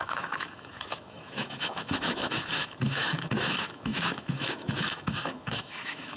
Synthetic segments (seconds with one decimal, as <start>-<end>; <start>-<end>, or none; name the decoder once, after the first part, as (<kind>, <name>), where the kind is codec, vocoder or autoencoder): 0.0-6.2 (autoencoder, DAC-VAE)